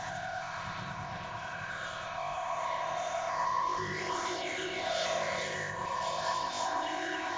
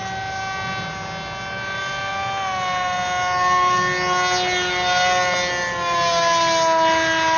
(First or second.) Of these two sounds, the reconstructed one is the first